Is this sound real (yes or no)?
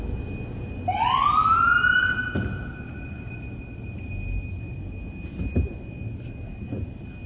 yes